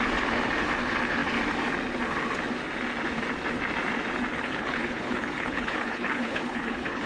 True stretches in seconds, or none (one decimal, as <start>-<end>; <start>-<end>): 0.0-4.3